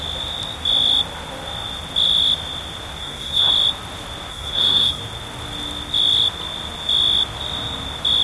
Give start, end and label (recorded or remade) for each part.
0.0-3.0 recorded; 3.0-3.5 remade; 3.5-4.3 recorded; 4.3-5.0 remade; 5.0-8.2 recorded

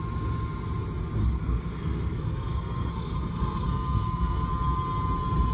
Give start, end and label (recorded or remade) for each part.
0.0-1.2 recorded; 1.2-4.5 remade; 4.5-5.5 recorded

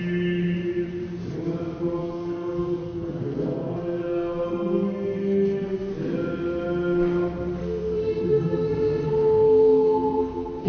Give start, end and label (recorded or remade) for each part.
0.0-2.0 recorded; 2.0-5.9 remade; 5.9-7.6 recorded; 7.6-10.7 remade

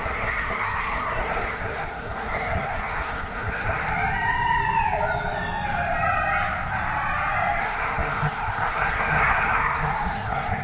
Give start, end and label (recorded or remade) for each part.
0.0-3.9 remade; 3.9-7.6 recorded; 7.6-10.6 remade